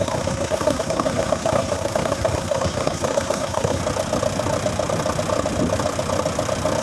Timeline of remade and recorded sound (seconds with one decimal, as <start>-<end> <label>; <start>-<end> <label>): 0.0-3.8 remade; 3.8-6.8 recorded